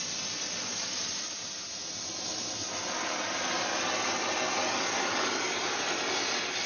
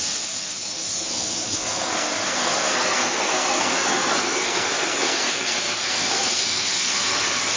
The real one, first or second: first